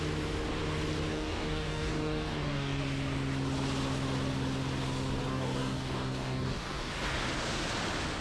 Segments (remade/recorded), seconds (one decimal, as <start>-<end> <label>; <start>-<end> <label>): 0.0-1.1 recorded; 1.1-2.8 remade; 2.8-5.3 recorded; 5.3-6.9 remade; 6.9-8.2 recorded